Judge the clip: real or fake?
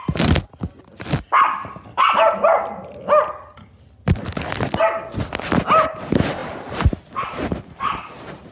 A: real